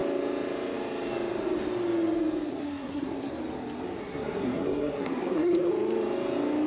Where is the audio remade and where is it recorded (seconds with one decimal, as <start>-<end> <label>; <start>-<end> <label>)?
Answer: 0.0-2.5 recorded; 2.5-3.3 remade; 3.3-4.0 recorded; 4.0-5.7 remade; 5.7-6.7 recorded